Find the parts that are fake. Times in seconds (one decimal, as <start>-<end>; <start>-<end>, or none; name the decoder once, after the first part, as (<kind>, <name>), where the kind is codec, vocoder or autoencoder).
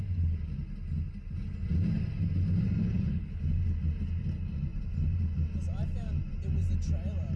2.8-3.4 (codec, HILCodec)